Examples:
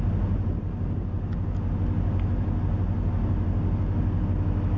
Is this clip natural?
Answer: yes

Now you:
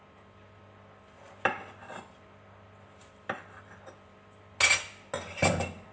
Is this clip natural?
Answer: yes